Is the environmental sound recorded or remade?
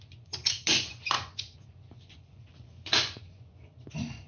remade